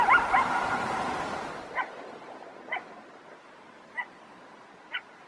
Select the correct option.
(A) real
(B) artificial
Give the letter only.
A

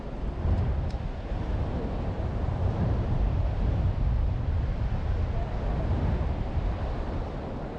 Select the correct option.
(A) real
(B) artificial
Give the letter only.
B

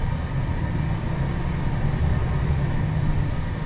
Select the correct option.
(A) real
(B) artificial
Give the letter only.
A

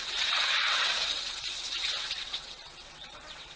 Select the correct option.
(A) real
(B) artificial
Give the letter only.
B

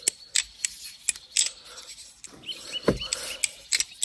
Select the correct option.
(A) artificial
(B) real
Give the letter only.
B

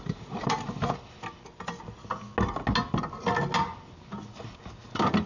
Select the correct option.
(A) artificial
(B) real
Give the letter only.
B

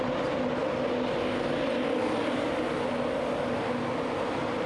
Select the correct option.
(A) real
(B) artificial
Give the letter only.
A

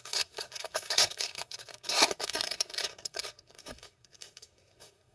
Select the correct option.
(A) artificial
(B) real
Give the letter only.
A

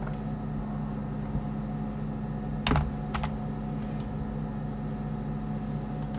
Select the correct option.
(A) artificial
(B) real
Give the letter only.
B